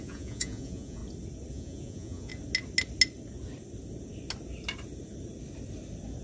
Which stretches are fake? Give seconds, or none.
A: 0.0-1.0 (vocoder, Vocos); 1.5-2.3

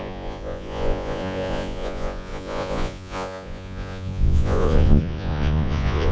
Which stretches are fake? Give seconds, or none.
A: 0.0-6.1 (vocoder, Vocos)

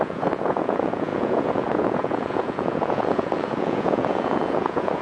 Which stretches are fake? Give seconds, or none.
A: 0.0-5.0 (vocoder, Vocos)

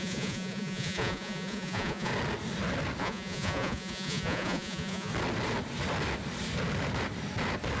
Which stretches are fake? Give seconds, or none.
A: 0.0-2.1 (vocoder, Vocos); 3.0-5.1

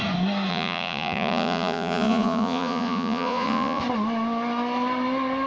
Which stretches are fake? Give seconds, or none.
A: 0.5-3.8 (vocoder, Vocos)

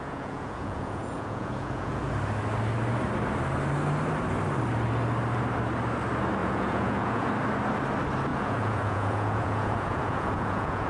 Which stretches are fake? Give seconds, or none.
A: 0.0-2.0 (vocoder, Vocos); 6.4-7.3; 8.3-10.9